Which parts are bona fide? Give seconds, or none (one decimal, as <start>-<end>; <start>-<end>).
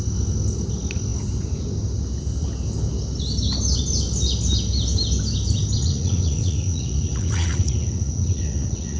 0.0-5.8